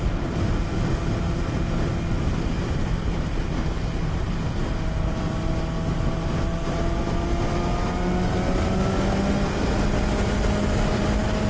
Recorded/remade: recorded